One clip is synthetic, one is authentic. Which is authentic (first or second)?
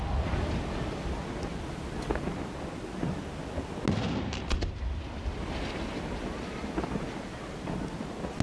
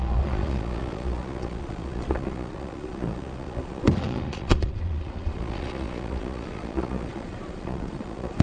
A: first